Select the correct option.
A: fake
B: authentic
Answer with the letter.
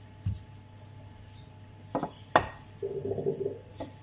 B